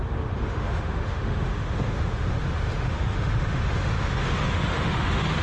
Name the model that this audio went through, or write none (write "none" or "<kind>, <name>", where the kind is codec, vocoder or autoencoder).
autoencoder, DAC-VAE